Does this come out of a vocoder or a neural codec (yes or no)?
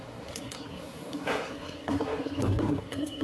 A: yes